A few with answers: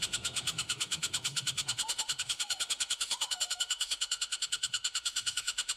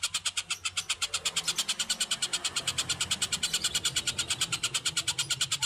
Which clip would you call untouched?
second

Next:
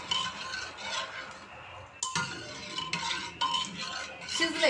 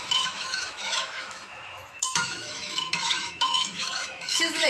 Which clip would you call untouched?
first